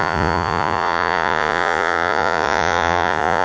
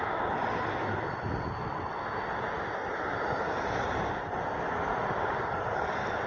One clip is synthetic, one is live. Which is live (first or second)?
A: second